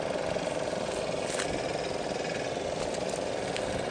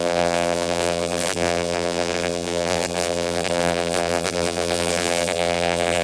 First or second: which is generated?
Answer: second